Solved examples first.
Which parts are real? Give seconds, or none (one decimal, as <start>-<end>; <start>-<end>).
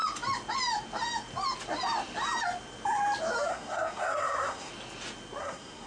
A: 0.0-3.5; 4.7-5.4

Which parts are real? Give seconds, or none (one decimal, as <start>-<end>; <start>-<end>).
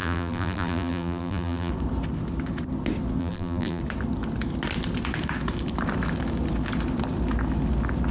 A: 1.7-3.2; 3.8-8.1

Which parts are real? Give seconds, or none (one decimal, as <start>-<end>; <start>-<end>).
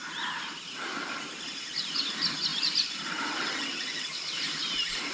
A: 0.0-3.4; 4.1-5.1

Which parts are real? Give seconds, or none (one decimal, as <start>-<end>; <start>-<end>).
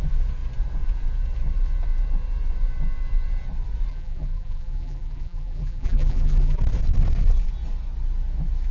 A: 0.0-3.9; 6.6-8.7